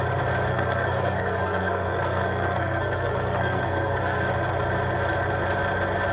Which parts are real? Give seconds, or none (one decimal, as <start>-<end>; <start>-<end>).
0.0-0.5; 4.2-6.1